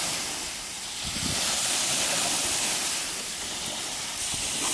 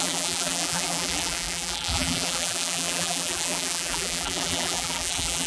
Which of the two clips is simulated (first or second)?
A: second